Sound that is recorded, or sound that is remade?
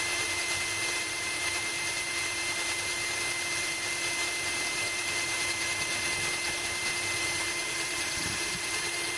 remade